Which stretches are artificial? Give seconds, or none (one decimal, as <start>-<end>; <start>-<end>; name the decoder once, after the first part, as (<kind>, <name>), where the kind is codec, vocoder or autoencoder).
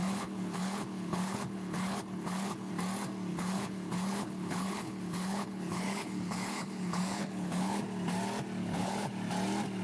0.0-2.7 (codec, HILCodec); 3.3-7.8; 8.6-9.1